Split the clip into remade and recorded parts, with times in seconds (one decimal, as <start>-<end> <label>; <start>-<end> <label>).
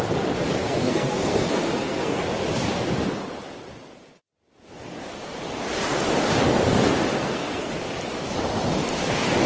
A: 0.0-0.6 recorded; 0.6-2.2 remade; 2.2-7.1 recorded; 7.1-7.7 remade; 7.7-9.5 recorded